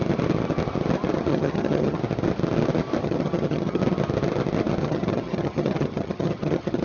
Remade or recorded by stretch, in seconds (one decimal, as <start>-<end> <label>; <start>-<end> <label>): 0.0-1.3 recorded; 1.3-2.0 remade; 2.0-3.0 recorded; 3.0-3.8 remade; 3.8-4.8 recorded; 4.8-6.8 remade